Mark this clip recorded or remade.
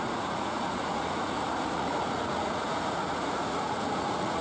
remade